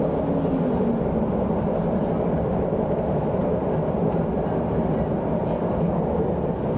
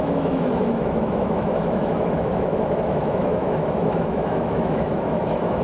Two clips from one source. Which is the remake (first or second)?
second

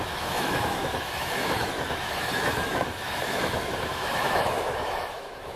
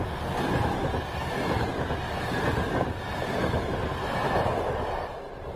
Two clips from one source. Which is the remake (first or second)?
first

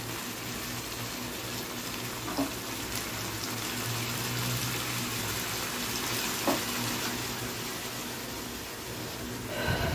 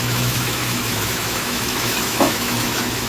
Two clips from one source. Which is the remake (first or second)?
second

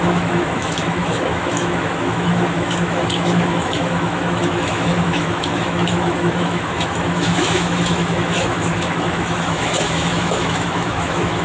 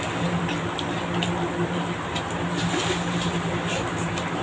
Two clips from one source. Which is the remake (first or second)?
first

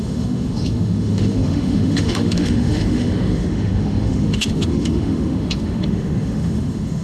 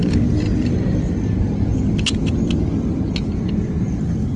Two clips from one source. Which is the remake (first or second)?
first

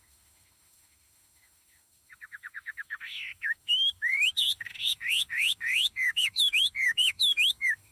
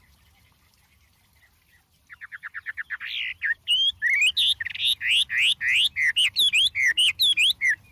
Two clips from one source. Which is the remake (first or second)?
first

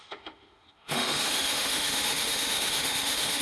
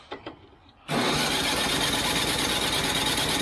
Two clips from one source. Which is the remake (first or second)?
first